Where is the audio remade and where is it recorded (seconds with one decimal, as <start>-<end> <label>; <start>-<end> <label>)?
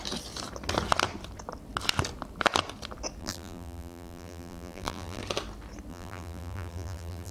0.0-3.2 recorded; 3.2-5.2 remade; 5.2-5.9 recorded; 5.9-7.3 remade